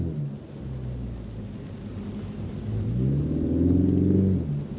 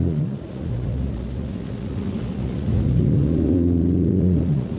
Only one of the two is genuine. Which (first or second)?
first